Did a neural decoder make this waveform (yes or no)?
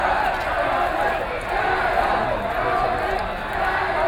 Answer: no